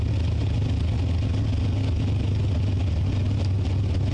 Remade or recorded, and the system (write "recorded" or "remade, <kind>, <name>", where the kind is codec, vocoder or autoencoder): recorded